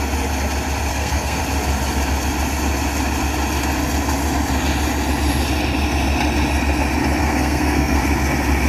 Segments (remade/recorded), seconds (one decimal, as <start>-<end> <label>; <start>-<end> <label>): 0.0-0.9 recorded; 0.9-1.4 remade; 1.4-7.2 recorded; 7.2-8.0 remade; 8.0-8.7 recorded